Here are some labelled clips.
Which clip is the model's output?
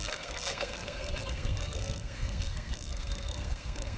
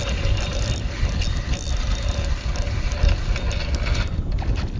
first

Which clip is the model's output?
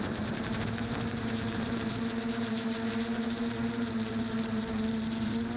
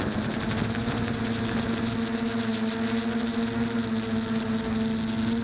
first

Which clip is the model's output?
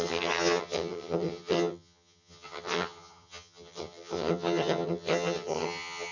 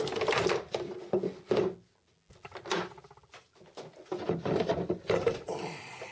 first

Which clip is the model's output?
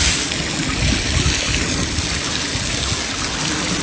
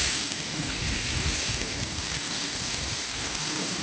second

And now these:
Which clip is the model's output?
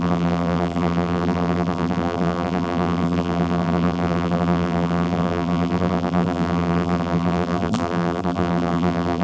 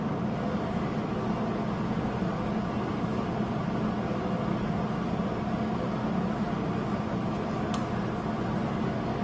first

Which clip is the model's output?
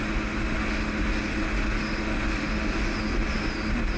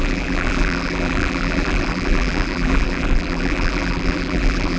second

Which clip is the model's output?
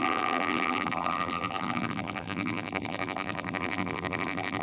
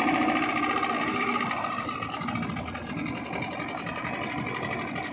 first